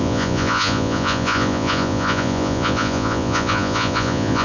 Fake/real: fake